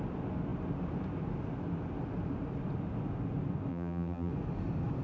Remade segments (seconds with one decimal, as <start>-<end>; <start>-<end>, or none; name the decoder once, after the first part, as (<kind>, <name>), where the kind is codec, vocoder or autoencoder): 3.7-4.3 (vocoder, BigVGAN v2)